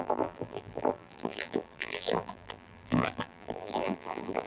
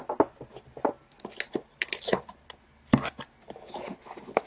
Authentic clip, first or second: second